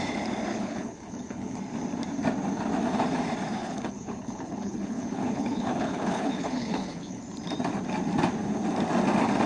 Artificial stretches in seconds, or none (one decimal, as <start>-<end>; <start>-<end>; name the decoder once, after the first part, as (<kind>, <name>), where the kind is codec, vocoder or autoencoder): 0.5-1.6 (codec, HILCodec); 3.6-7.2